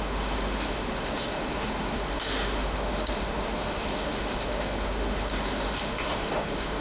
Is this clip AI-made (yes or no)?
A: yes